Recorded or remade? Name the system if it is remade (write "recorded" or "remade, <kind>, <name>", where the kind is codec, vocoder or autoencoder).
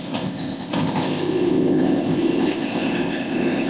remade, codec, ZipCodec